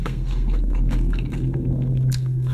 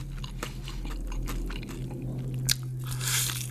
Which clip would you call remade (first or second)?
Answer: first